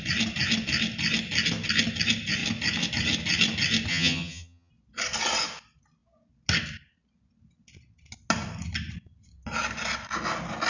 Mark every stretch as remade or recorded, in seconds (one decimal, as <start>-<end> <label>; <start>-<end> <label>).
0.0-3.9 recorded; 3.9-4.7 remade; 4.7-10.7 recorded